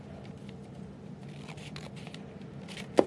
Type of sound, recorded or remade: recorded